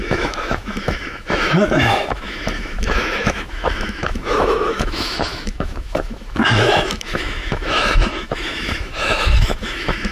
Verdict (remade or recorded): remade